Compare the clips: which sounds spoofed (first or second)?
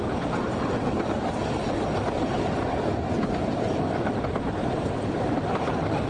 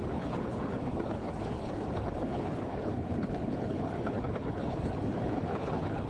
second